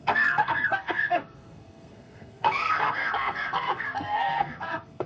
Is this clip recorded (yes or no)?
no